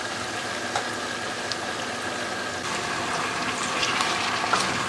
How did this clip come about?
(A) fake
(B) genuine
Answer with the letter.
B